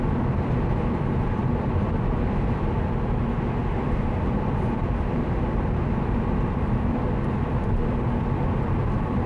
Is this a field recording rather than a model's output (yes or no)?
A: no